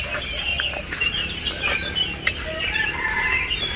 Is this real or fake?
real